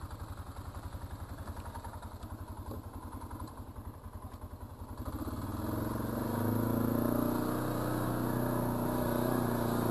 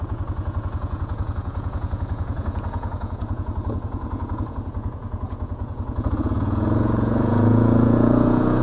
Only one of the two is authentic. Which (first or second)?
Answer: first